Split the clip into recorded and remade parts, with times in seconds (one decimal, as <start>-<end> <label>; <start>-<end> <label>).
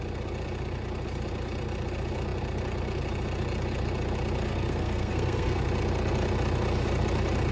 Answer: 0.0-4.5 recorded; 4.5-5.6 remade; 5.6-7.5 recorded